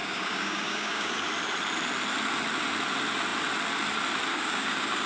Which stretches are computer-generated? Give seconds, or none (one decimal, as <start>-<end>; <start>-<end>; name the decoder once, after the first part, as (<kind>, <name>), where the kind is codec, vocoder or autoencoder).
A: 0.0-1.1 (codec, DAC); 4.3-5.1